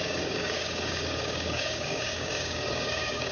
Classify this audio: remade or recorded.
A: remade